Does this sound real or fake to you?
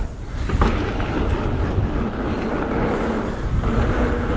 real